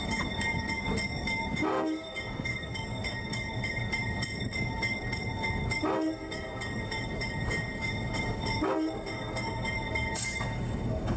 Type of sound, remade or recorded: remade